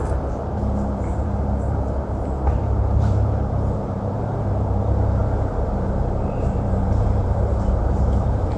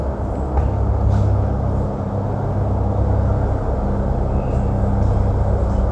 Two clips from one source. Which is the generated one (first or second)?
first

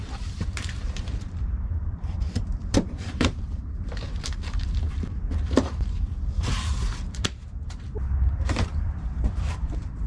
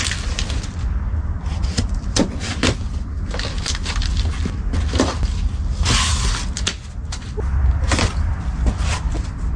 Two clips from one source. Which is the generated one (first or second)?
first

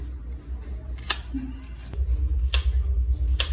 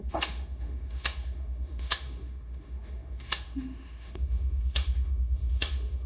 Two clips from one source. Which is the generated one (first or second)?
second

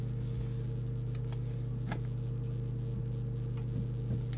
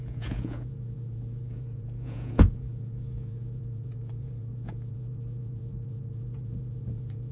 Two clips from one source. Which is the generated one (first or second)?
second